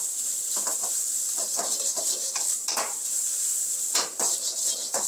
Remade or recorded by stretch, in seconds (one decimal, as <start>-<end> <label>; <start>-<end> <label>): 0.0-0.8 recorded; 0.8-3.8 remade; 3.8-5.1 recorded